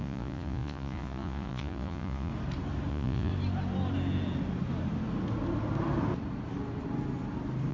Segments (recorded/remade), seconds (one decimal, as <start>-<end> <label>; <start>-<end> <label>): 0.0-2.3 remade; 2.3-2.9 recorded; 2.9-3.3 remade; 3.3-7.7 recorded